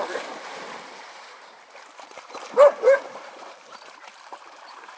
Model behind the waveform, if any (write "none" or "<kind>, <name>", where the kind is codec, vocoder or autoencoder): vocoder, BigVGAN v2